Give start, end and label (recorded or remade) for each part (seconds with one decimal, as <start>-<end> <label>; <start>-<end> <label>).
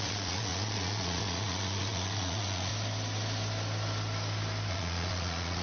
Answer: 0.0-2.7 remade; 2.7-4.7 recorded; 4.7-5.6 remade